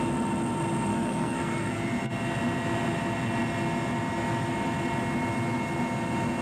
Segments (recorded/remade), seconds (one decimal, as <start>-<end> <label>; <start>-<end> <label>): 0.0-0.9 recorded; 0.9-1.7 remade; 1.7-6.4 recorded